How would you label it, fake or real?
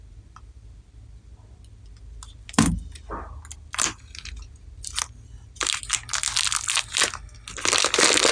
real